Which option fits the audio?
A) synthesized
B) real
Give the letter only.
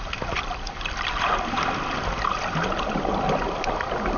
B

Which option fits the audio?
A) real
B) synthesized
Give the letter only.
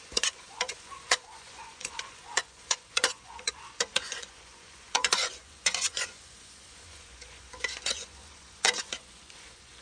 B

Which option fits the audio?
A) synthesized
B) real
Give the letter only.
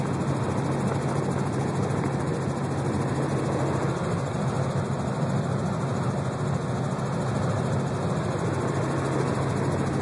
B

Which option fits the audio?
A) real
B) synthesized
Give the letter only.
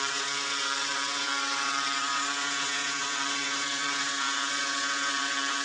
B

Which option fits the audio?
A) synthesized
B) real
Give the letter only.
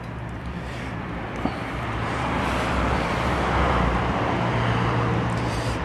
A